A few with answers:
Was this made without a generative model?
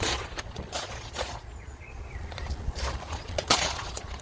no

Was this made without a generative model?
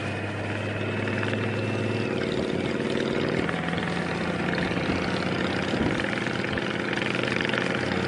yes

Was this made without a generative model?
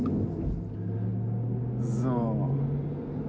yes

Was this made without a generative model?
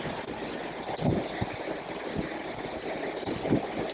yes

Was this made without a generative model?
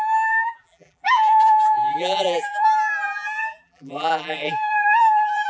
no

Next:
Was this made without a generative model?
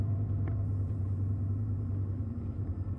no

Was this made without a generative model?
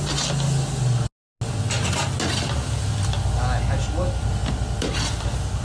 yes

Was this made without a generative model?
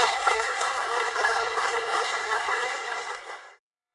no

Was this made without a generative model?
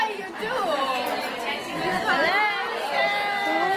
yes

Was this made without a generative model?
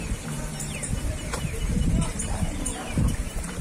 no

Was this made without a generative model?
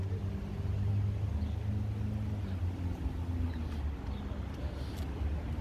yes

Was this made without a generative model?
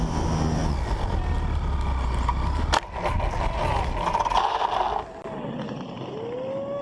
yes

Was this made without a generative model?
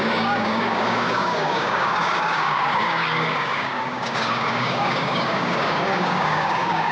no